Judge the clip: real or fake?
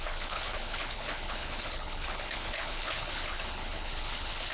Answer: fake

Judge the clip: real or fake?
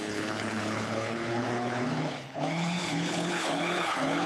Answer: fake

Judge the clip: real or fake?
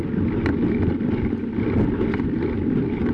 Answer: real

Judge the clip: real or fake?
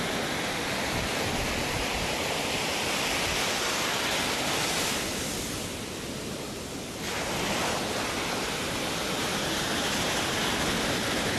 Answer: real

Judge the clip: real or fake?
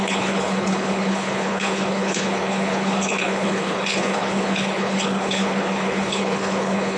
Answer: fake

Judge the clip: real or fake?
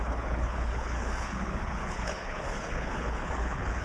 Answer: fake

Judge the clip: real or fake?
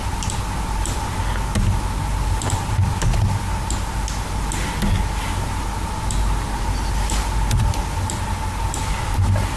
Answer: real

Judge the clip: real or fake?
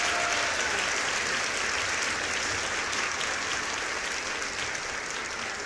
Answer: real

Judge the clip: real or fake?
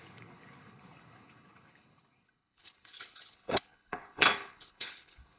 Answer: fake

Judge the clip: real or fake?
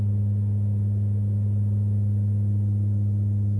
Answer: real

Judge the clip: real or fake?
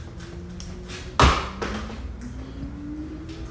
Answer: real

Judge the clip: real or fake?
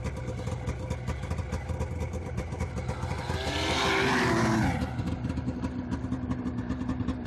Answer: real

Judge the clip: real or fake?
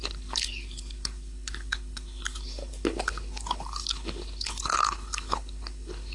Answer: fake